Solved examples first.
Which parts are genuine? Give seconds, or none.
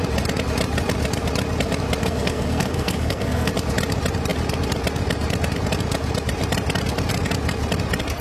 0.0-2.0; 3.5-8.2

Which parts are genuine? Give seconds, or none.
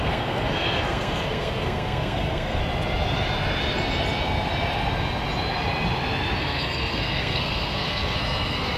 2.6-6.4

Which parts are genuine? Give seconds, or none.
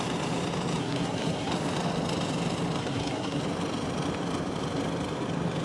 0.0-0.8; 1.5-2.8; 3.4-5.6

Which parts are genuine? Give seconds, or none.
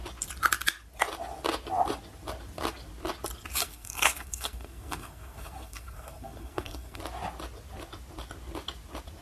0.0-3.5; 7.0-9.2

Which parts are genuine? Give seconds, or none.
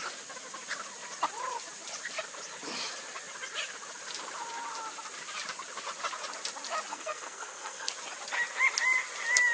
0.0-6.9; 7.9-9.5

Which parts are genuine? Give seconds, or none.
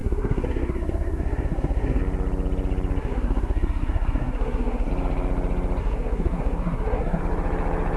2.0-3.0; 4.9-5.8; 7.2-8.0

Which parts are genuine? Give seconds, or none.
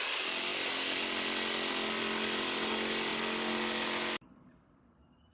0.0-5.3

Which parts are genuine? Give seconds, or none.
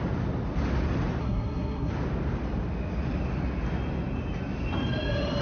0.0-1.2; 1.9-5.4